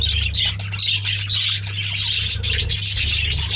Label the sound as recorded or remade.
recorded